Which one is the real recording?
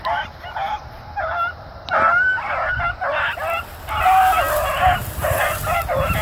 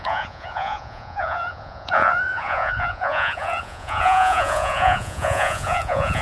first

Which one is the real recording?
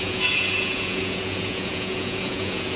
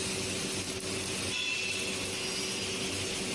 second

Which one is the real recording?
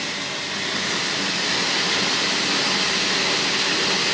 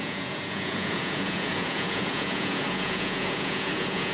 first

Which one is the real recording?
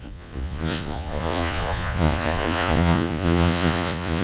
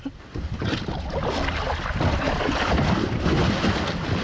second